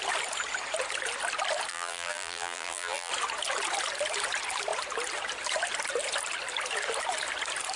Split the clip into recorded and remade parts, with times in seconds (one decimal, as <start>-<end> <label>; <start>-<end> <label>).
0.0-1.7 recorded; 1.7-3.1 remade; 3.1-7.8 recorded